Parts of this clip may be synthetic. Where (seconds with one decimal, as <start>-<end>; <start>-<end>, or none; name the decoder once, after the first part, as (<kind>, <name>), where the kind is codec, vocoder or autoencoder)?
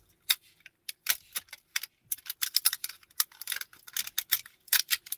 1.0-4.1 (vocoder, BigVGAN v2)